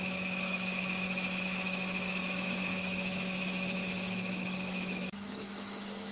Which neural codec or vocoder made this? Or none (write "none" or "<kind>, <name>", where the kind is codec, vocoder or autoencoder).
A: autoencoder, DAC-VAE